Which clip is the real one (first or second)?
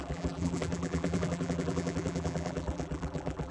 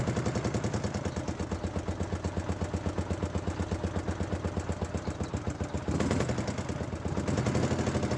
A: second